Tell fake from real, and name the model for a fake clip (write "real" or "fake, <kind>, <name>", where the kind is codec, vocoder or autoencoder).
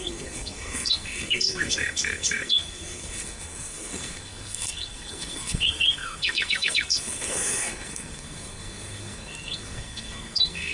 fake, codec, SNAC